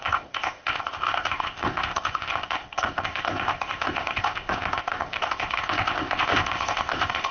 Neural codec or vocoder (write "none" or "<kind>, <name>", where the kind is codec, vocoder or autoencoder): codec, ZipCodec